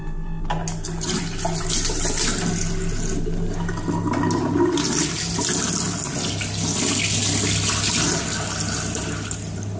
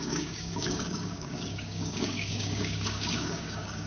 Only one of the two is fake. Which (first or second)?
second